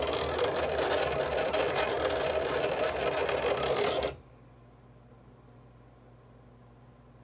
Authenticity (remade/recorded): recorded